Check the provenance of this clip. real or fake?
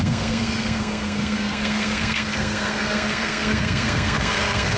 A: fake